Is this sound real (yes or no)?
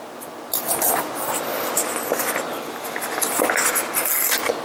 yes